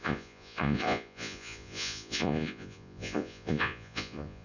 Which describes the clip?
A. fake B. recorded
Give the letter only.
A